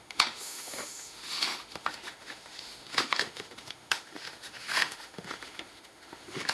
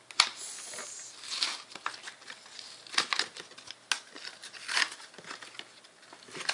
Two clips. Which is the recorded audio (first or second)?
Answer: second